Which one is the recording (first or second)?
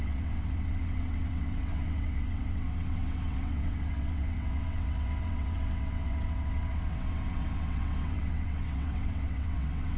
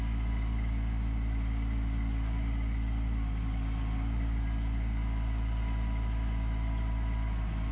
second